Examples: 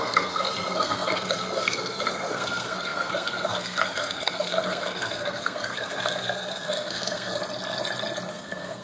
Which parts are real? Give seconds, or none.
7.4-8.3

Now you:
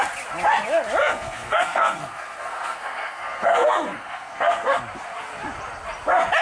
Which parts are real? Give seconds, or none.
0.0-1.0; 4.8-6.4

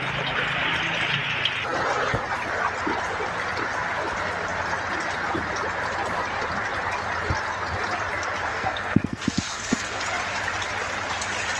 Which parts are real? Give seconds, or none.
0.0-8.5; 10.0-11.6

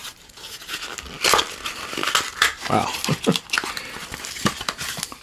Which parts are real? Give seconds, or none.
0.0-5.2

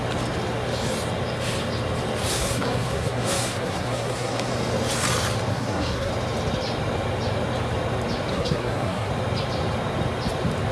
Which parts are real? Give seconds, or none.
0.0-2.3; 4.5-5.5; 6.1-8.3; 9.1-10.7

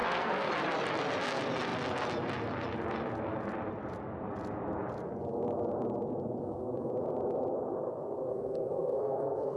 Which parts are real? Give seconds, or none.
0.5-6.4; 6.9-8.3

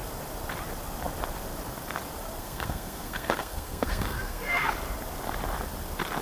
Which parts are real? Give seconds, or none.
0.0-2.4; 4.7-6.2